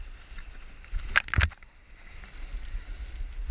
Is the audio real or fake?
real